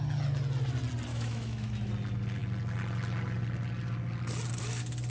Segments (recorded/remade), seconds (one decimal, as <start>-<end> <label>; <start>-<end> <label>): 0.0-1.1 recorded; 1.1-1.9 remade; 1.9-5.1 recorded